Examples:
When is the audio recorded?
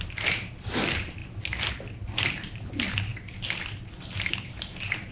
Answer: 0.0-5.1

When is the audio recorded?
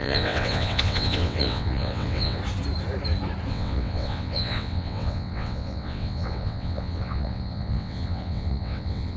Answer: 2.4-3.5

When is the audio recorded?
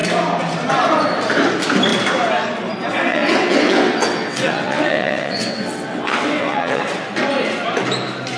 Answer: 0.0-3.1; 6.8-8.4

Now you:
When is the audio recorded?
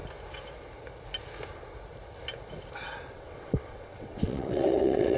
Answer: 0.0-3.1